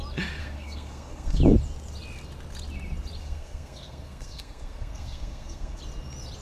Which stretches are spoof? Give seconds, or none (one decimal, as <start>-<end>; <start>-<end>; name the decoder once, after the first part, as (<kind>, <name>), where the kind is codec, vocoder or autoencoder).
0.4-1.4 (codec, SNAC); 3.2-5.8